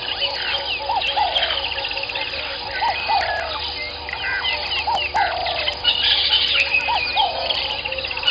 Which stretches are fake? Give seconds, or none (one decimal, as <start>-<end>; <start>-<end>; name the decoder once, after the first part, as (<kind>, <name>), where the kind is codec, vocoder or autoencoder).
none